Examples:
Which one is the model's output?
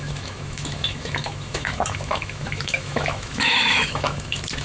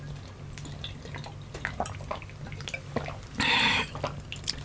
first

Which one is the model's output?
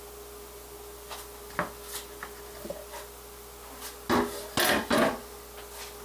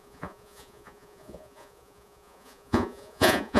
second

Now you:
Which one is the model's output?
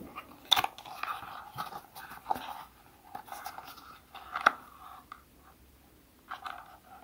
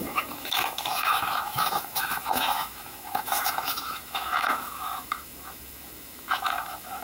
second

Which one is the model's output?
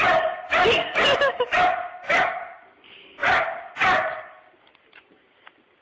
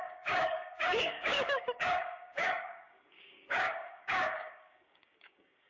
second